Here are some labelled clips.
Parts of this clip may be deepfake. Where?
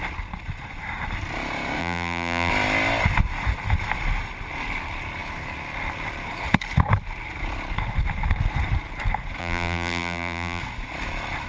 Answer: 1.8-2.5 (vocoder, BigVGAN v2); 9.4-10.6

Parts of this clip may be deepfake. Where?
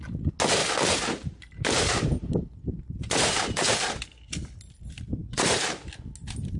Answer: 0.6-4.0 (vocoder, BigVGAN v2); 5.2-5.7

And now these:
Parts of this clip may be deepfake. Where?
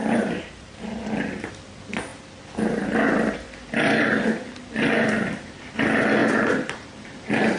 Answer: 0.0-1.5 (vocoder, BigVGAN v2); 6.2-7.1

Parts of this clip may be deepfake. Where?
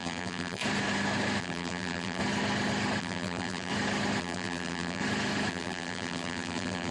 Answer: 0.0-0.6 (vocoder, BigVGAN v2); 1.4-2.2; 3.0-3.7; 4.2-5.0; 5.5-6.9